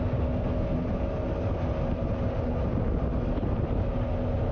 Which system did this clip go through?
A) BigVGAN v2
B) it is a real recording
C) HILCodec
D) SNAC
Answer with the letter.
B